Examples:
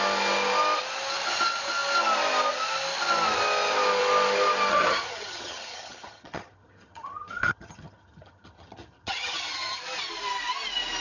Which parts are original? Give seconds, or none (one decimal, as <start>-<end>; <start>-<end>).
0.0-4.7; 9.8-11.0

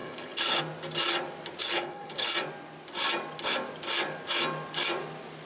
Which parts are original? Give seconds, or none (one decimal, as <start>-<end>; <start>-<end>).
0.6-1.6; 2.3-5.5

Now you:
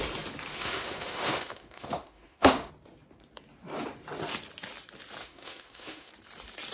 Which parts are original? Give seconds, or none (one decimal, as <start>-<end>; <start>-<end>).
0.0-0.5; 2.7-5.2; 6.1-6.7

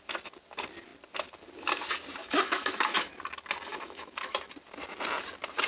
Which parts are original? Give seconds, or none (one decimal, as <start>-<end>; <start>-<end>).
0.0-2.2; 3.1-3.7; 4.5-5.7

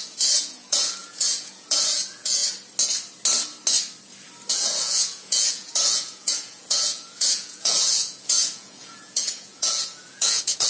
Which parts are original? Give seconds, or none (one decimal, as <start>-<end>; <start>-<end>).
2.4-4.5

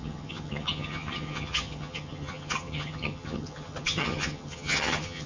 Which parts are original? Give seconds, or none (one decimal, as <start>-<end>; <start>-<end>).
none

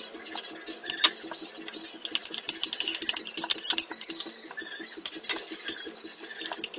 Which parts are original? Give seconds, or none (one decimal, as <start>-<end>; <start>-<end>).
0.0-6.8

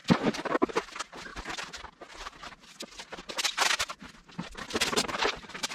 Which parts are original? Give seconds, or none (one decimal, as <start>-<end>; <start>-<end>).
0.7-4.9